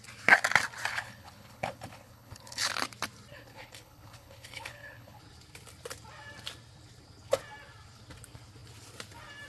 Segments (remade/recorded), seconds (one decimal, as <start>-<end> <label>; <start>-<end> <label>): 0.0-0.9 recorded; 0.9-2.7 remade; 2.7-3.3 recorded; 3.3-5.2 remade; 5.2-9.5 recorded